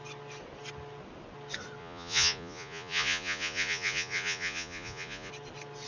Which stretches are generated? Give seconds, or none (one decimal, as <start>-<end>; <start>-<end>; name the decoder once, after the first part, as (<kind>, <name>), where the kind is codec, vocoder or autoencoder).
1.8-5.3 (vocoder, Vocos)